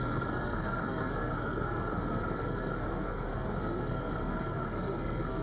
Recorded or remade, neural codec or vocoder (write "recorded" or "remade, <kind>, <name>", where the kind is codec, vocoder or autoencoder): remade, codec, SNAC